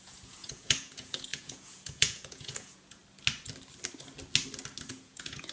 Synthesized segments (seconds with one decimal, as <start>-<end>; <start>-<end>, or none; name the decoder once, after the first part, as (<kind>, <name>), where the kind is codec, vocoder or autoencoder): 0.0-3.0 (vocoder, Vocos); 4.9-5.5